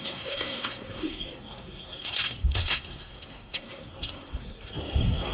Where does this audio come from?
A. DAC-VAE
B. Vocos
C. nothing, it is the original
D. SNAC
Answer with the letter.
D